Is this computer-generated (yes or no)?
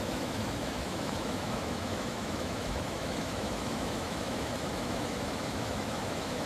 yes